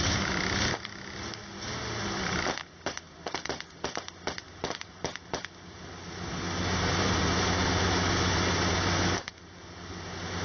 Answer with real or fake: real